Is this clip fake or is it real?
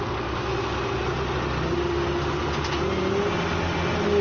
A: real